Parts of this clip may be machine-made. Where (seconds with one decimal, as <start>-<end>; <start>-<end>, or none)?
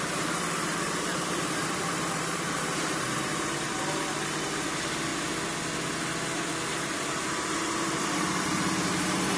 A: 0.0-5.1; 6.7-9.4